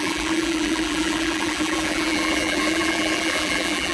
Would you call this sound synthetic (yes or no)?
yes